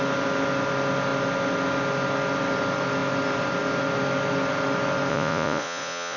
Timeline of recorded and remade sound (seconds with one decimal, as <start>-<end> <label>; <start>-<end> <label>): 0.0-5.1 recorded; 5.1-6.2 remade